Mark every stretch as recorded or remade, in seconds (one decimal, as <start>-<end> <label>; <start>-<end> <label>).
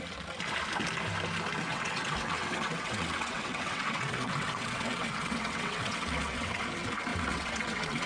0.0-1.7 recorded; 1.7-6.6 remade; 6.6-7.1 recorded; 7.1-8.1 remade